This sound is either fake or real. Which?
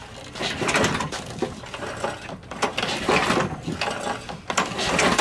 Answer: real